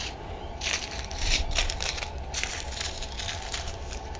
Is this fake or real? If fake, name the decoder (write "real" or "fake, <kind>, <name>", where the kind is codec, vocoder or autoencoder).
fake, vocoder, BigVGAN v2